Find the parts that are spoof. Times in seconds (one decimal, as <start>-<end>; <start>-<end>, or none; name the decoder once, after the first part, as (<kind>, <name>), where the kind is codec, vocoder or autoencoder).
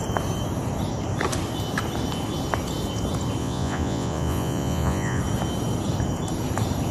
3.4-5.2 (vocoder, Vocos)